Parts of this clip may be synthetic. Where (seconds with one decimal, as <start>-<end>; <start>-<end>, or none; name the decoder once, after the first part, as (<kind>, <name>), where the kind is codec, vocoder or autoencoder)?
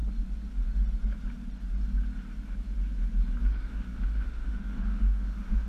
3.4-5.7 (autoencoder, DAC-VAE)